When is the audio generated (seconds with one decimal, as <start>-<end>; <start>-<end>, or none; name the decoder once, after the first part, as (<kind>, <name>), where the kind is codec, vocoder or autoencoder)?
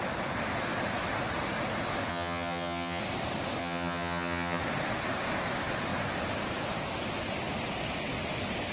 2.1-3.0 (vocoder, HiFi-GAN); 3.6-4.6